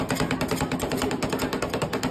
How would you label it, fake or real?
real